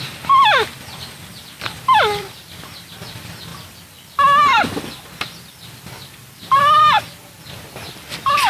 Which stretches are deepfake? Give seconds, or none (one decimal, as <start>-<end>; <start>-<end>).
none